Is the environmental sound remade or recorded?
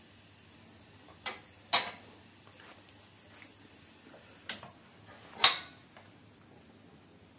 recorded